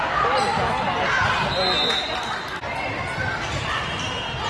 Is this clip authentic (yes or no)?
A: yes